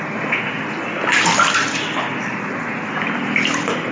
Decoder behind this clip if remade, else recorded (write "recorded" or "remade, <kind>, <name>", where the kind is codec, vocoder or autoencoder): recorded